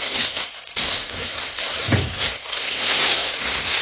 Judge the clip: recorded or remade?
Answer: remade